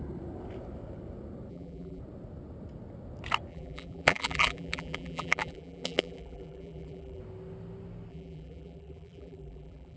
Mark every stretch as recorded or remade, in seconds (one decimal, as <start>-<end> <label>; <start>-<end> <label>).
0.0-1.5 recorded; 1.5-2.0 remade; 2.0-3.5 recorded; 3.5-7.2 remade; 7.2-8.1 recorded; 8.1-10.0 remade